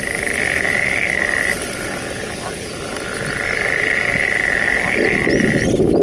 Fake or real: real